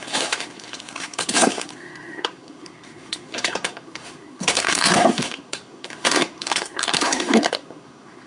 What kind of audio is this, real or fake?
fake